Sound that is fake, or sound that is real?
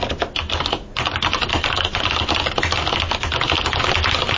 real